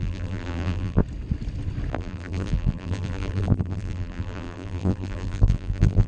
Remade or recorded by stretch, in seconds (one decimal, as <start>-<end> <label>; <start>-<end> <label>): 0.0-1.0 remade; 1.0-1.9 recorded; 1.9-6.1 remade